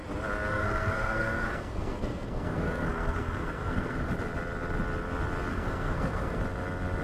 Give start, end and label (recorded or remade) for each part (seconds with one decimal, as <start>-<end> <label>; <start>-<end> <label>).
0.0-0.5 recorded; 0.5-4.1 remade; 4.1-5.5 recorded; 5.5-6.4 remade; 6.4-7.0 recorded